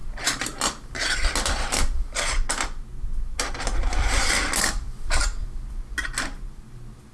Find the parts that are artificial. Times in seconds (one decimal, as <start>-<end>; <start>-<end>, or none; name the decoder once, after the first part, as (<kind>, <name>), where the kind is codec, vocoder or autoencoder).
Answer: none